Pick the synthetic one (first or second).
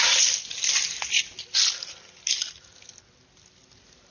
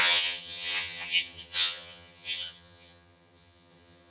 second